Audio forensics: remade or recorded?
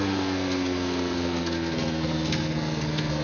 remade